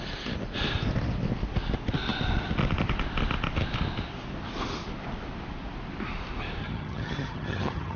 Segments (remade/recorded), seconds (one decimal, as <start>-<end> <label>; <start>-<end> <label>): 0.0-6.6 recorded; 6.6-8.0 remade